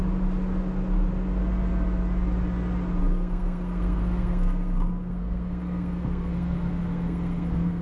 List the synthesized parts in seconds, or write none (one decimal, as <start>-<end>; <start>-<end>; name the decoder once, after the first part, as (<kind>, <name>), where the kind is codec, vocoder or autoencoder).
3.0-7.8 (codec, SNAC)